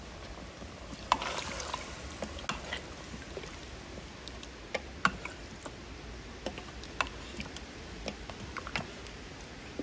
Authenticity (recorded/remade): recorded